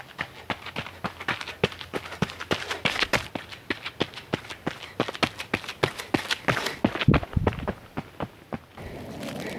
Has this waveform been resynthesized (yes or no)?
no